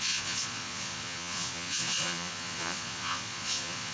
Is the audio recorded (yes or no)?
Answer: no